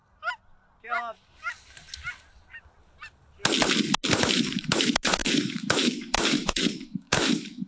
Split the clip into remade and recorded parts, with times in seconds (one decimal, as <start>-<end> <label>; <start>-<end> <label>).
0.0-4.2 recorded; 4.2-7.7 remade